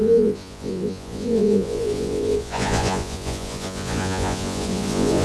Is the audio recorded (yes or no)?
no